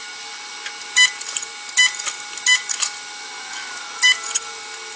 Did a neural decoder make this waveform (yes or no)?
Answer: no